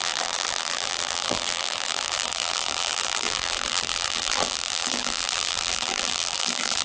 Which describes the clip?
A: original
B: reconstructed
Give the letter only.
B